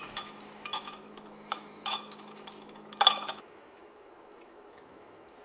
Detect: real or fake fake